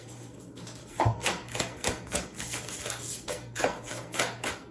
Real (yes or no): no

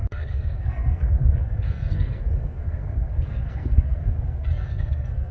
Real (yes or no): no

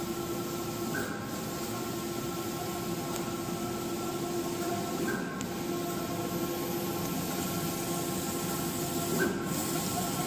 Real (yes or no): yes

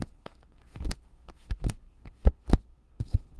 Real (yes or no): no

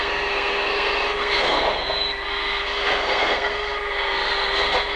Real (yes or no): no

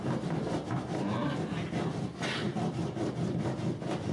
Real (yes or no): yes